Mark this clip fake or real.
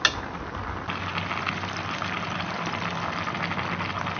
real